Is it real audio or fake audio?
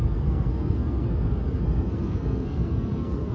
fake